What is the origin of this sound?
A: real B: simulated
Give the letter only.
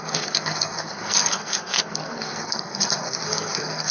B